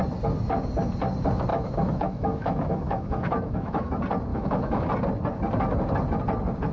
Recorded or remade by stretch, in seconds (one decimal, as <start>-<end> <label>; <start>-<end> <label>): 0.0-1.5 recorded; 1.5-3.9 remade; 3.9-4.3 recorded; 4.3-4.9 remade; 4.9-6.7 recorded